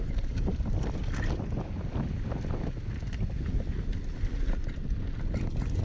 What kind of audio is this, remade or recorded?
recorded